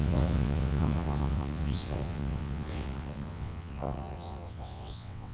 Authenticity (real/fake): fake